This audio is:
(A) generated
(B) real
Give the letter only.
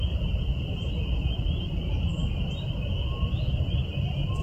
B